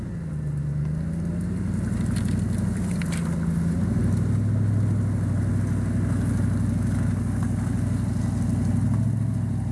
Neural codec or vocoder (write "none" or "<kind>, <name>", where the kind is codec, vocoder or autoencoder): none